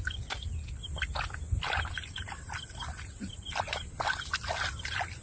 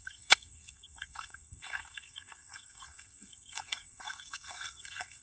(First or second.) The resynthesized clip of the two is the second